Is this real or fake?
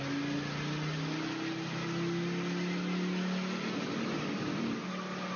real